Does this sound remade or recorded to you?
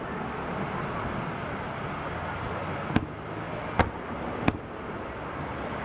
recorded